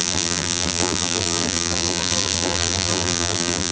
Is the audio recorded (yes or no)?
no